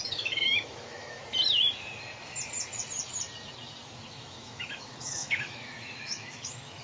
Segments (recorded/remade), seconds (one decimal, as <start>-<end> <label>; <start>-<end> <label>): 0.0-1.2 remade; 1.2-4.1 recorded; 4.1-6.8 remade